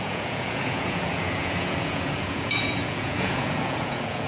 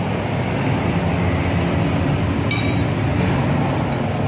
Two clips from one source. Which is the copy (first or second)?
first